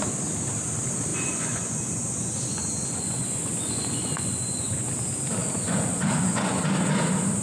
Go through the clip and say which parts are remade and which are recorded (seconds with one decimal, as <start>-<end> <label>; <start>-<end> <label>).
0.0-1.1 recorded; 1.1-4.9 remade; 4.9-5.4 recorded; 5.4-6.6 remade; 6.6-7.4 recorded